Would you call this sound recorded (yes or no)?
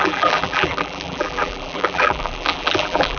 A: no